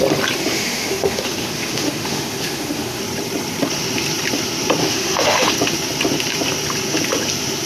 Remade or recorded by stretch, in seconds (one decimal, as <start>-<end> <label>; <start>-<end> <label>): 0.0-0.5 recorded; 0.5-3.0 remade; 3.0-4.8 recorded; 4.8-5.5 remade; 5.5-7.7 recorded